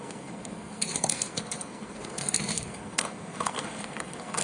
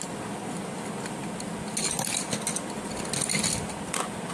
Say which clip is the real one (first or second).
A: second